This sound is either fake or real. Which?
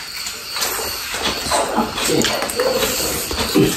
real